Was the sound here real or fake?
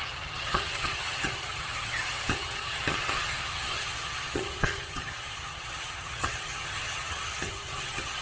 fake